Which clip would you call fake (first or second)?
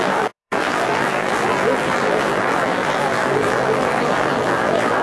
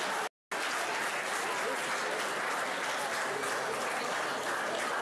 first